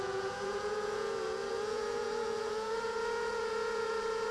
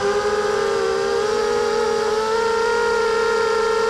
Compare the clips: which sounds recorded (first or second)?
second